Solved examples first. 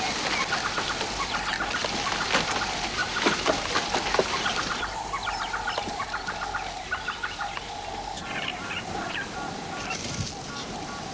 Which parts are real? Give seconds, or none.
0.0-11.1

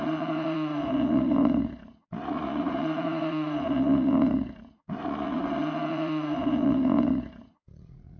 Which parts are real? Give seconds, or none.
5.4-5.9

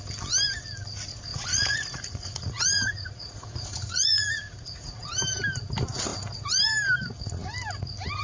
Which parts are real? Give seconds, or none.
0.0-1.3; 5.1-8.2

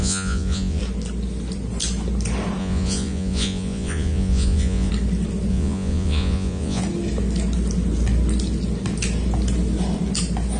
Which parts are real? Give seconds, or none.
0.8-2.6; 4.9-5.5; 6.8-10.6

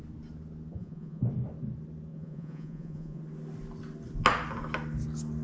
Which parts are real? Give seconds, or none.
0.0-0.7; 1.3-2.1; 3.2-5.4

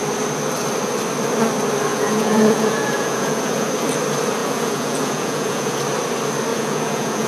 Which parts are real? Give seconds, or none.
0.0-1.9; 3.7-4.4; 5.8-6.5

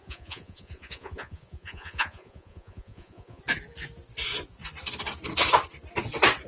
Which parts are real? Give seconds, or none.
3.4-6.5